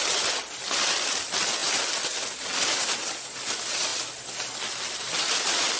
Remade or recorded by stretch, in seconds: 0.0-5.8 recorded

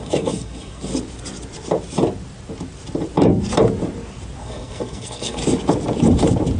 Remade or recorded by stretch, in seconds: 0.0-0.9 remade; 0.9-4.4 recorded; 4.4-5.4 remade; 5.4-6.6 recorded

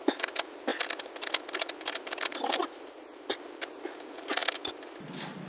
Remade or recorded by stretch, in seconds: 0.0-0.7 remade; 0.7-2.0 recorded; 2.0-4.4 remade; 4.4-5.5 recorded

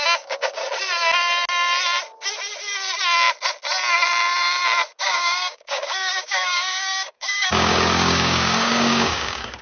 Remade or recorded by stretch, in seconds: 0.0-0.6 remade; 0.6-5.0 recorded; 5.0-9.6 remade

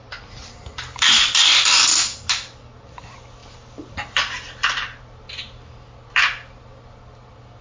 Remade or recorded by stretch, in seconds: 0.0-7.6 recorded